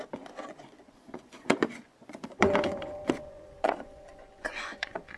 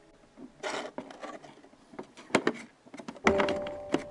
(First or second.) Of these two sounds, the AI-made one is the first